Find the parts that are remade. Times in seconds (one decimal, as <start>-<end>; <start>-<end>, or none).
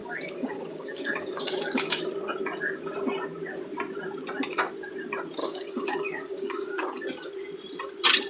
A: 0.0-2.0; 5.4-7.1